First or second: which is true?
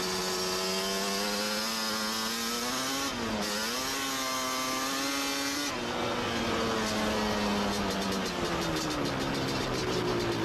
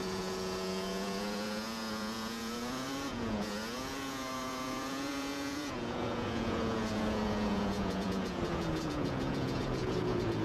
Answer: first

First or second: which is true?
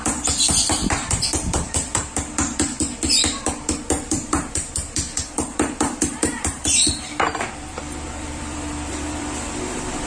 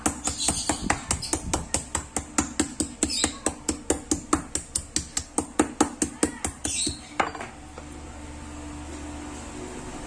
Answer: second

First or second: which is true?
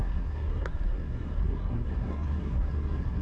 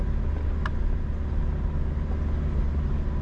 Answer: second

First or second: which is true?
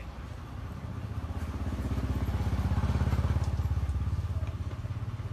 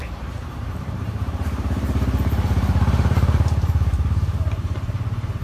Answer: first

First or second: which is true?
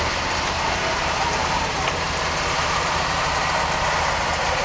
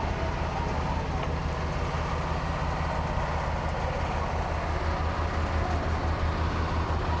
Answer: second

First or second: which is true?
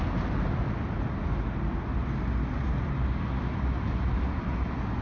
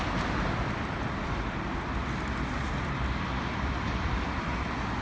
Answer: first